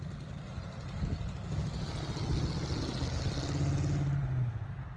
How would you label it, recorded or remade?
recorded